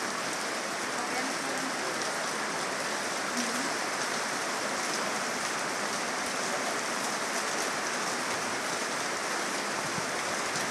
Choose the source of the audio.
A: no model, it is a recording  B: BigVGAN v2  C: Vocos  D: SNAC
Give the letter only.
A